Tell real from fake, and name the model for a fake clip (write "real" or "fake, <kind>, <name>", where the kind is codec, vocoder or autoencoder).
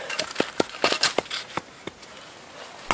real